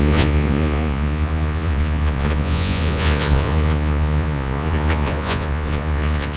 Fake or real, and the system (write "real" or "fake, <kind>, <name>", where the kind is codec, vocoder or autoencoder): fake, vocoder, Vocos